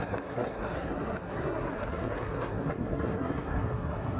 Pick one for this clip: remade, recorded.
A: remade